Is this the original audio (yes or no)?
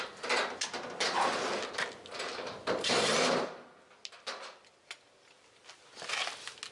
yes